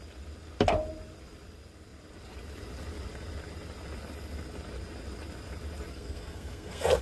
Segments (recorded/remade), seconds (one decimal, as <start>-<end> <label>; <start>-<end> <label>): 0.0-5.9 recorded; 5.9-7.0 remade